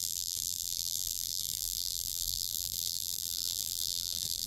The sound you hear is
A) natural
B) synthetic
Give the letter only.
B